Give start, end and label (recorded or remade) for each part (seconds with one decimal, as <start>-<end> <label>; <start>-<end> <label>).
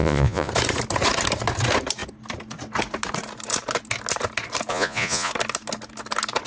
0.0-0.5 remade; 0.5-4.7 recorded; 4.7-5.3 remade; 5.3-6.5 recorded